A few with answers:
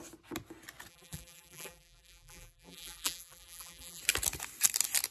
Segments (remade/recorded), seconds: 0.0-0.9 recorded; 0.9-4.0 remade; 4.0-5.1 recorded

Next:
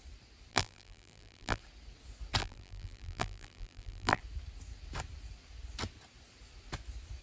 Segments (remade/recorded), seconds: 0.0-0.5 recorded; 0.5-1.6 remade; 1.6-2.4 recorded; 2.4-4.2 remade; 4.2-7.2 recorded

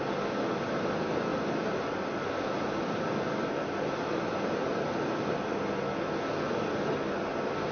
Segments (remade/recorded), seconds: 0.0-7.7 recorded

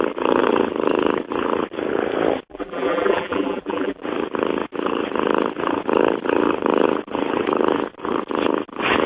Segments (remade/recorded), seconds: 0.0-2.5 recorded; 2.5-4.0 remade; 4.0-9.1 recorded

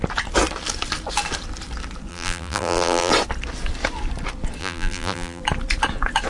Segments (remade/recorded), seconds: 0.0-2.1 recorded; 2.1-3.1 remade; 3.1-4.6 recorded; 4.6-5.4 remade; 5.4-6.3 recorded

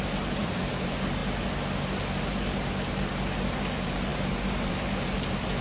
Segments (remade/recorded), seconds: 0.0-1.2 remade; 1.2-3.5 recorded; 3.5-5.6 remade